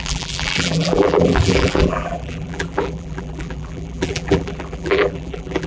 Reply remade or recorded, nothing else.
remade